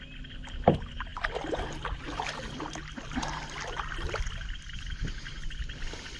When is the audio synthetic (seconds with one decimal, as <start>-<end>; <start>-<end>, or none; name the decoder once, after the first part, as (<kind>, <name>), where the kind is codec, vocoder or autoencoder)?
none